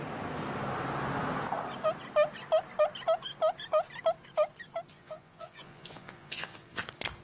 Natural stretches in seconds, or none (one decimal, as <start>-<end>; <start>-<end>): 0.0-4.9; 6.8-7.2